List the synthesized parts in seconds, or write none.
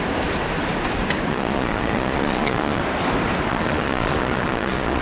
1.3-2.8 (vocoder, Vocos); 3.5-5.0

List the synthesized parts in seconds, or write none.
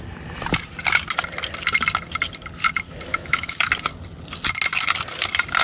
3.1-3.7 (autoencoder, DAC-VAE)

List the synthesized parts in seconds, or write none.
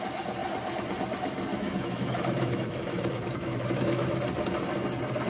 1.5-4.2 (autoencoder, DAC-VAE)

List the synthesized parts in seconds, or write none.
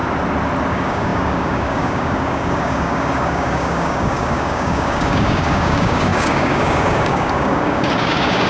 0.7-8.5 (codec, DAC)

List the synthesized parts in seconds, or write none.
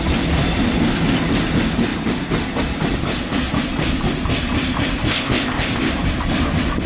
5.1-5.9 (codec, ZipCodec)